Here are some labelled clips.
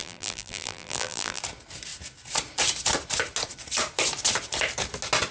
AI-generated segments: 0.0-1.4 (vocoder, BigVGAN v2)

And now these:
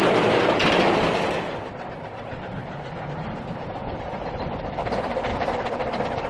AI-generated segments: 0.0-2.6 (vocoder, BigVGAN v2); 3.3-5.3